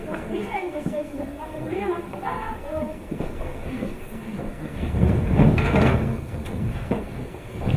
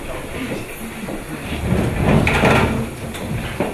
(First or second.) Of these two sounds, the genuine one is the second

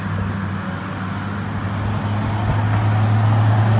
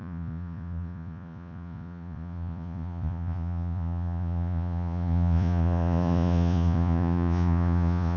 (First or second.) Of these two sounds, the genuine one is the first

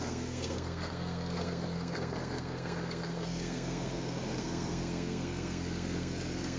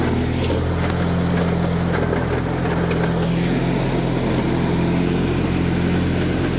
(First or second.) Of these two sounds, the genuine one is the second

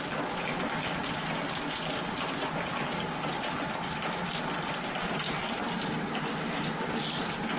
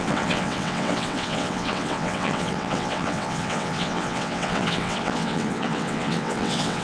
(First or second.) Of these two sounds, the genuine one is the first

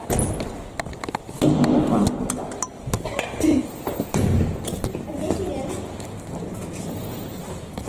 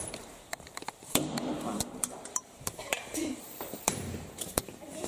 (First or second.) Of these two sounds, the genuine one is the first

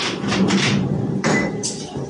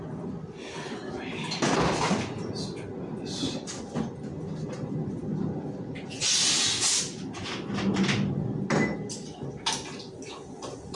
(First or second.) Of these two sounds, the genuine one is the second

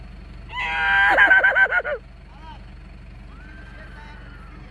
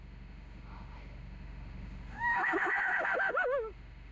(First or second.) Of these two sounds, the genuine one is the first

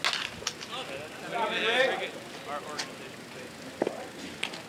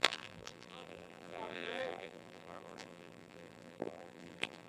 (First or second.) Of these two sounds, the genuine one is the first